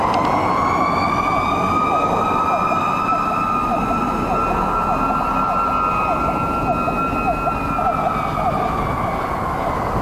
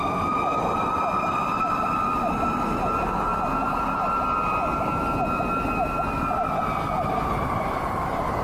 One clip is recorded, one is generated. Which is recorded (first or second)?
first